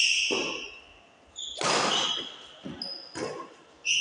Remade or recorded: recorded